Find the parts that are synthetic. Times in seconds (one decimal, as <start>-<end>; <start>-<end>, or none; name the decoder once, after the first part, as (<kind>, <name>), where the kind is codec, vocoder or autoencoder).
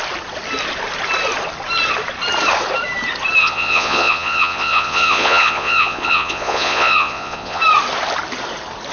3.4-7.6 (vocoder, Vocos)